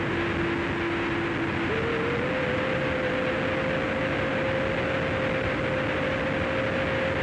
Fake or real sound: real